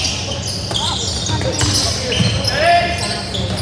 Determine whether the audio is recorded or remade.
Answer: recorded